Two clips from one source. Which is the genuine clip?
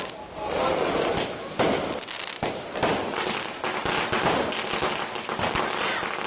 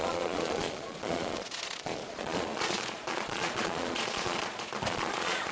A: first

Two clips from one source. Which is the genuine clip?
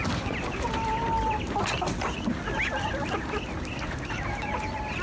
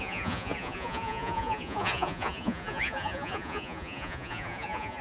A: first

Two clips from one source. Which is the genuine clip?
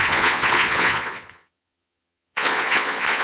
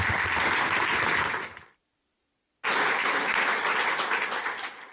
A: second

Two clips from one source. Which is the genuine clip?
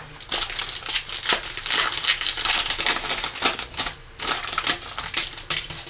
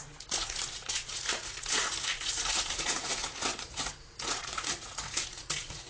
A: first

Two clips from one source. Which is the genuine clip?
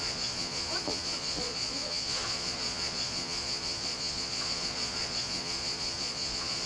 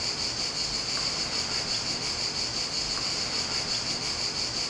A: second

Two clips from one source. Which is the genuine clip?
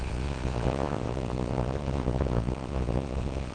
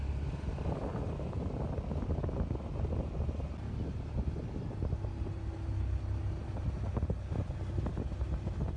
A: second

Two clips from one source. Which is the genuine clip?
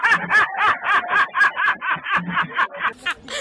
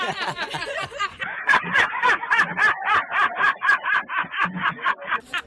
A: first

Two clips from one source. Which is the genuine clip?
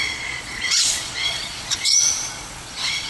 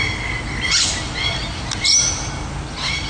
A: second